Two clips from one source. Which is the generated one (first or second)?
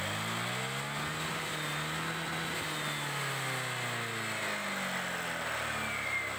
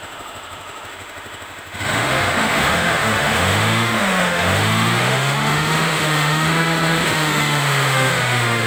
second